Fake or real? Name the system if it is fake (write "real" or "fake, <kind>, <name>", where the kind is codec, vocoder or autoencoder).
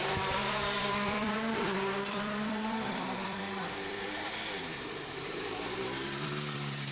fake, vocoder, BigVGAN v2